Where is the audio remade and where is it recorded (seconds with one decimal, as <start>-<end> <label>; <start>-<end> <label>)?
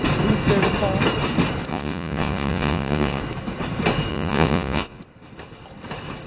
0.0-1.7 recorded; 1.7-3.2 remade; 3.2-4.1 recorded; 4.1-5.0 remade; 5.0-6.3 recorded